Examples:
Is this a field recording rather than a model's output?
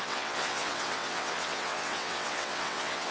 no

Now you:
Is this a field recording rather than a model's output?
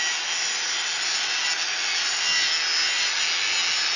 yes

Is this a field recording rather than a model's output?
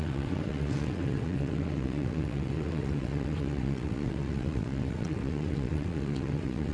no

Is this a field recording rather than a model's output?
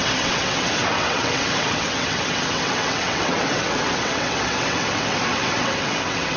no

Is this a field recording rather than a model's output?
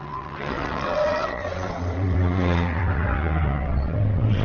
no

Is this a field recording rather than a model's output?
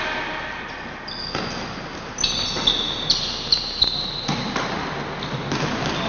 yes